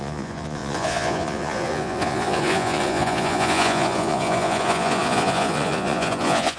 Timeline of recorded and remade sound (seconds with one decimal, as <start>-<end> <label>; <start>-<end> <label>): 0.0-6.6 remade